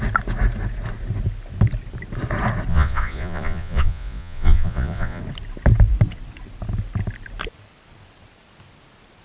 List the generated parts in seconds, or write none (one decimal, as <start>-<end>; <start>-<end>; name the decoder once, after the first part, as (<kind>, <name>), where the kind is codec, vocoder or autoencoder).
2.7-5.2 (vocoder, Vocos)